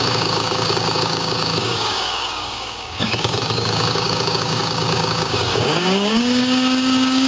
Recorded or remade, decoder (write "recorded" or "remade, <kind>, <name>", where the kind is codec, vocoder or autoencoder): remade, codec, DAC